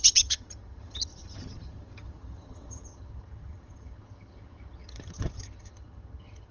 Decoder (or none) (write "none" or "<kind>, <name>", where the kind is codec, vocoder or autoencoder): vocoder, HiFi-GAN